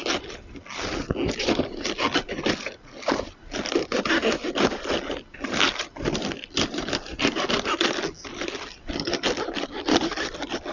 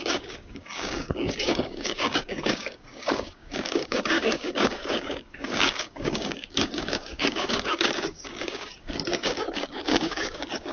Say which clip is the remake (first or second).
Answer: second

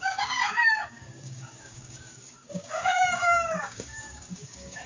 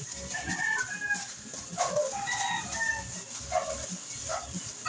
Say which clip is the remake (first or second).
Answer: first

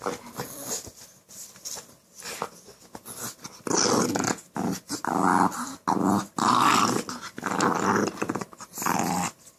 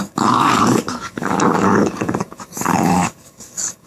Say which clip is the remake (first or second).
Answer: second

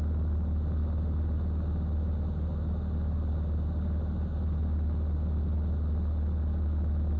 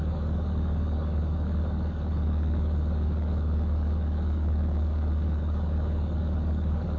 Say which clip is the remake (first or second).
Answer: second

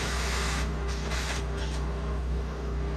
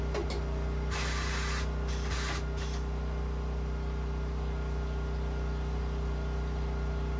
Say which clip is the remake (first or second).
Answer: first